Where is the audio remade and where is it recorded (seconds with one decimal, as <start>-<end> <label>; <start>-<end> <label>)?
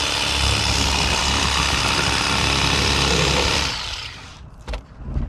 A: 0.0-1.2 recorded; 1.2-4.4 remade; 4.4-5.3 recorded